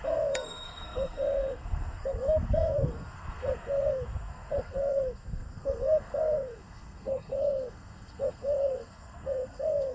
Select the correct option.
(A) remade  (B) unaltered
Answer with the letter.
A